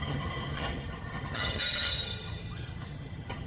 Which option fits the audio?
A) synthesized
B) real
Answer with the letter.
A